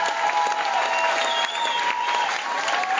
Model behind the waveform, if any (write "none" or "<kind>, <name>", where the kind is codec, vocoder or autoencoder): none